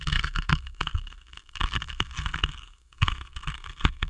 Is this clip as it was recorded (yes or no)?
no